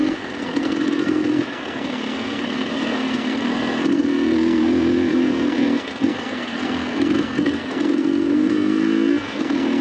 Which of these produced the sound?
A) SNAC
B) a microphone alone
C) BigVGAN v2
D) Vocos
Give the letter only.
A